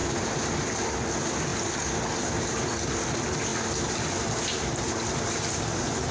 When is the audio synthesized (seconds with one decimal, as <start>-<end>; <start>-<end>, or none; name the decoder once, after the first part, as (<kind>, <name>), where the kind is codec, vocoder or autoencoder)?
none